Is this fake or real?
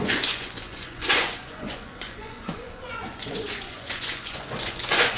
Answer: fake